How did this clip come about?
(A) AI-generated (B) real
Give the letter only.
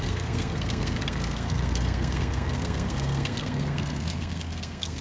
A